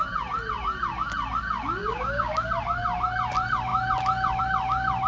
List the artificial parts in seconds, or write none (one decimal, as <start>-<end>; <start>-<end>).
1.8-2.5